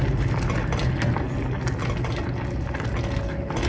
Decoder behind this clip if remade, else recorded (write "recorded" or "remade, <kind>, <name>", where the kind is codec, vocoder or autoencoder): recorded